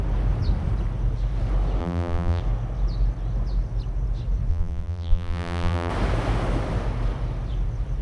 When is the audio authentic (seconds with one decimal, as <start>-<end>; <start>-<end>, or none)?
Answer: 0.0-1.8; 2.4-4.5; 5.9-8.0